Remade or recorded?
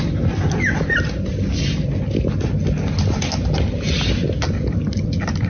recorded